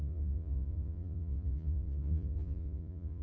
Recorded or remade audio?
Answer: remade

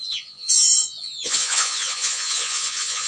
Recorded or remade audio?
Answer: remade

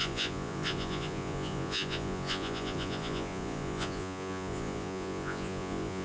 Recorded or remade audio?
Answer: remade